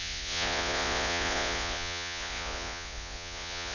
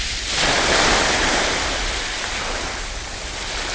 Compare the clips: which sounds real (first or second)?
second